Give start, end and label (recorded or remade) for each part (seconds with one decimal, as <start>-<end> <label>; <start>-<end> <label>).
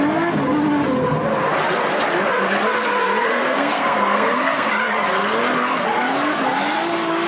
0.0-3.3 recorded; 3.3-4.7 remade; 4.7-7.3 recorded